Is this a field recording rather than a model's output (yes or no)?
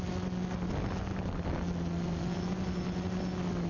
yes